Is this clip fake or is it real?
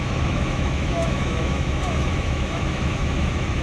fake